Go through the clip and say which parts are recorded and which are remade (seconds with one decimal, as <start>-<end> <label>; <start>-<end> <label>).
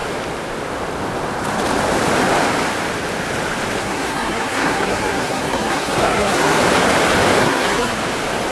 0.0-3.8 recorded; 3.8-6.6 remade; 6.6-7.4 recorded; 7.4-8.0 remade; 8.0-8.5 recorded